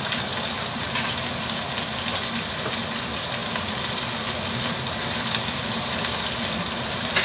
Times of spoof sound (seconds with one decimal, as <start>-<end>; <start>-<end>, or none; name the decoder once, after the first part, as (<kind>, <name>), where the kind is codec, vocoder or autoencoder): none